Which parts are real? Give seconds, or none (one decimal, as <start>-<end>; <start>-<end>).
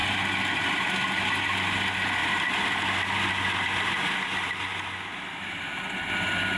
0.0-6.6